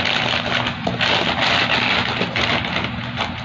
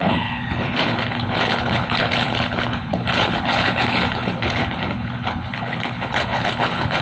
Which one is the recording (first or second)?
first